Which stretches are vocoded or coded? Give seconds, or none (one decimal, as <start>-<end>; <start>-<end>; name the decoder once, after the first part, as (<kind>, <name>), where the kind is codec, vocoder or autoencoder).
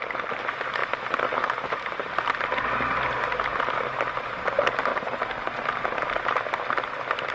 4.9-5.5 (vocoder, BigVGAN v2)